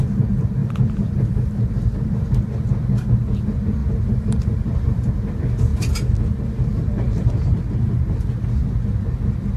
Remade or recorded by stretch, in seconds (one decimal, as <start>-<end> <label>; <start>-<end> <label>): 0.0-0.6 recorded; 0.6-2.1 remade; 2.1-3.8 recorded; 3.8-5.3 remade; 5.3-9.6 recorded